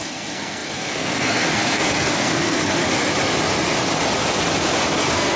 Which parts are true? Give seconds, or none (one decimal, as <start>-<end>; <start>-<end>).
2.8-5.0